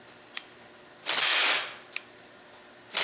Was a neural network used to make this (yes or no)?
no